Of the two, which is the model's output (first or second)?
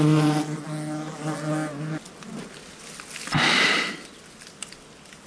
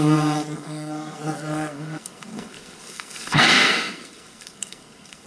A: second